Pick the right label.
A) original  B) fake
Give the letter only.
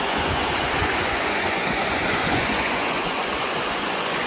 B